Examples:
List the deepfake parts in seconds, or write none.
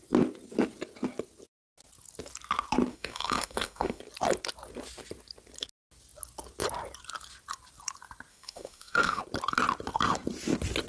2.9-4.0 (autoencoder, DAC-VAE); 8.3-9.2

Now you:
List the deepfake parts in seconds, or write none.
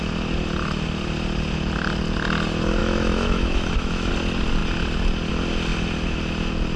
2.8-4.1 (autoencoder, DAC-VAE)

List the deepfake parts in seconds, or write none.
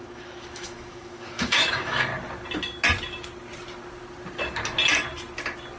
0.0-2.1 (autoencoder, DAC-VAE)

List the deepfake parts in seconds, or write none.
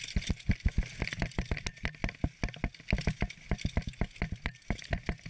none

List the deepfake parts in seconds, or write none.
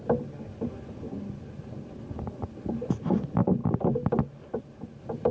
none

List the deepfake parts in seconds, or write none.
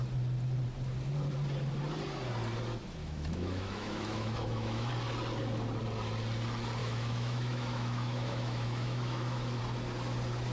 3.0-4.9 (autoencoder, DAC-VAE); 6.8-9.6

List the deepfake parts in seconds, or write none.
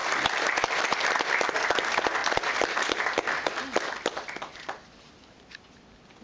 none